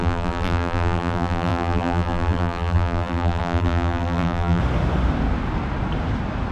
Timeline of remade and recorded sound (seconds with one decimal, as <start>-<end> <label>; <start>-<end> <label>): 0.0-4.6 remade; 4.6-6.5 recorded